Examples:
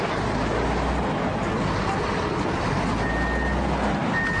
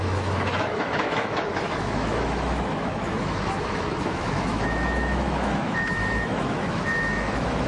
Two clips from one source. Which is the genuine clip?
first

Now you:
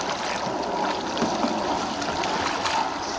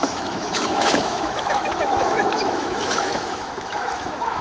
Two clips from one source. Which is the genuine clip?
first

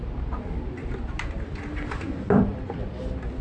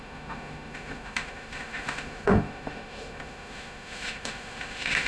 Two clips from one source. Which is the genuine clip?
first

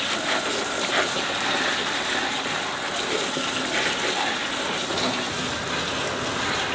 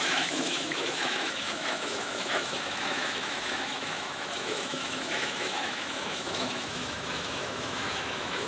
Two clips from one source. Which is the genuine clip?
first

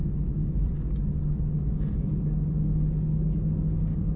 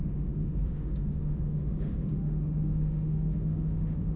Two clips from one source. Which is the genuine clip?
first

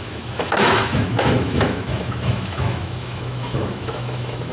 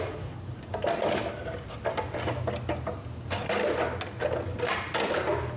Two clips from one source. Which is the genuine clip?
second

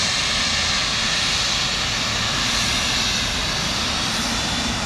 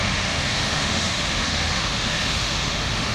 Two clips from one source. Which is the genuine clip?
first